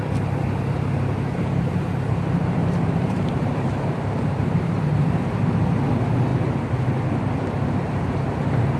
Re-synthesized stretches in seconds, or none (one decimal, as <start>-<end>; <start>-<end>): 0.0-6.3; 7.7-8.8